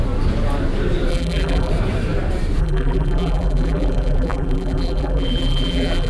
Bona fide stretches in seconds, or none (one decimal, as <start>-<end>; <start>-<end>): 0.0-1.1; 1.7-2.6